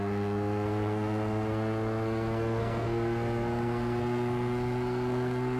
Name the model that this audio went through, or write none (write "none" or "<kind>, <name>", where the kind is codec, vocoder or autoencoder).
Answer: codec, SNAC